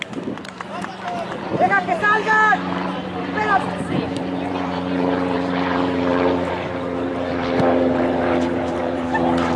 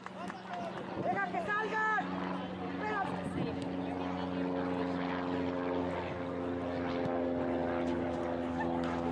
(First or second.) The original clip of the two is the second